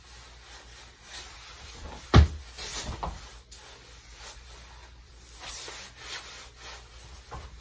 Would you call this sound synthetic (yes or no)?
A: no